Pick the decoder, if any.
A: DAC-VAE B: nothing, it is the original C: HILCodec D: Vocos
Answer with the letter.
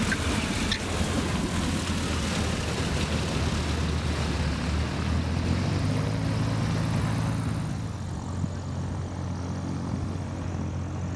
B